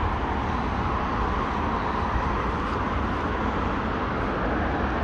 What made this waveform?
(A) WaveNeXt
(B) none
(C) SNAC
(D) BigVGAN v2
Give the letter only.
B